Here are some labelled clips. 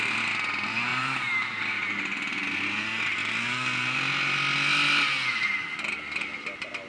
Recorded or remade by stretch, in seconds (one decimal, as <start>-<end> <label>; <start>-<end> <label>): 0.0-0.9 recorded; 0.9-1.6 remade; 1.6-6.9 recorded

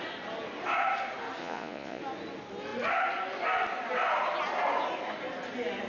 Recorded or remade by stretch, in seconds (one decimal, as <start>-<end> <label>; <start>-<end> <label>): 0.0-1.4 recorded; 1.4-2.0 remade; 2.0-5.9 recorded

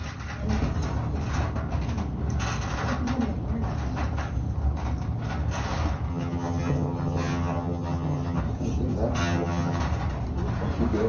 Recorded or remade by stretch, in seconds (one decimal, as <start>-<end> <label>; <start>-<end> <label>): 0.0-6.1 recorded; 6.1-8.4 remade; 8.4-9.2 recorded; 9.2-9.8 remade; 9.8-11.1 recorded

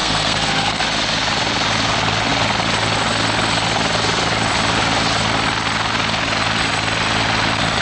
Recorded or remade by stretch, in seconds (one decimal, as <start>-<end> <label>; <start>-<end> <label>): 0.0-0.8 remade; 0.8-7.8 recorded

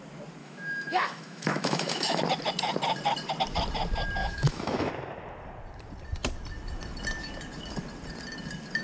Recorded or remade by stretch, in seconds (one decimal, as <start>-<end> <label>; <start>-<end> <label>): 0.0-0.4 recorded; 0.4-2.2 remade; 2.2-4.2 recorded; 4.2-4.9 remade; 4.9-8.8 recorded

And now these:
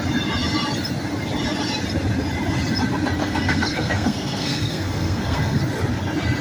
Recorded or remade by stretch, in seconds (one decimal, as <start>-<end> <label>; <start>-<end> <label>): 0.0-3.2 recorded; 3.2-5.6 remade; 5.6-6.4 recorded

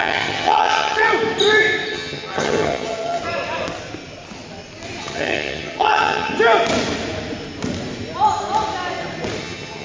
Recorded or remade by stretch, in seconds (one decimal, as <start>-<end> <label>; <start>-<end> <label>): 0.0-1.1 remade; 1.1-1.9 recorded; 1.9-3.2 remade; 3.2-5.0 recorded; 5.0-6.3 remade; 6.3-9.4 recorded; 9.4-9.8 remade